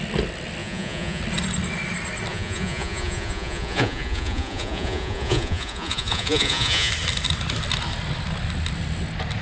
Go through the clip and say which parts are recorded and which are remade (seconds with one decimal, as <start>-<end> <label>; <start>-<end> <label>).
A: 0.0-0.6 recorded; 0.6-1.2 remade; 1.2-2.3 recorded; 2.3-6.9 remade; 6.9-9.4 recorded